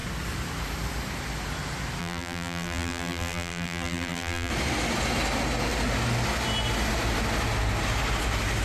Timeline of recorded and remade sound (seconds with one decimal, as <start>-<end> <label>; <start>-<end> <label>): 0.0-2.0 recorded; 2.0-4.5 remade; 4.5-8.6 recorded